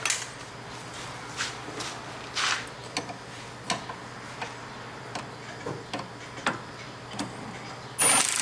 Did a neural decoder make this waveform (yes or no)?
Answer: no